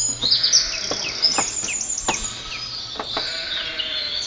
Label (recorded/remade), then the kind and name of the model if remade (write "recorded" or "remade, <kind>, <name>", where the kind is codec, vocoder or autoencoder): recorded